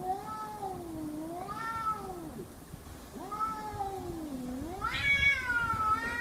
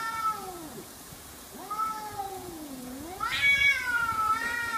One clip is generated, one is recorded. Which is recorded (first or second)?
first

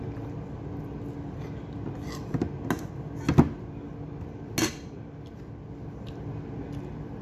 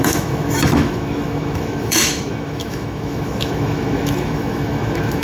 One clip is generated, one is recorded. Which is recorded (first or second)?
first